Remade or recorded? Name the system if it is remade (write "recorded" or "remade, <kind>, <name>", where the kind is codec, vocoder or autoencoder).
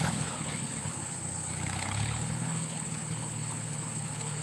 remade, codec, HILCodec